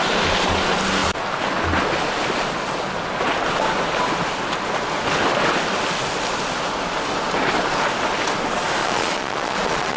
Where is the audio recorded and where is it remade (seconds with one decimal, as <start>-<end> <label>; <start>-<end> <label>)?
0.0-8.8 recorded; 8.8-10.0 remade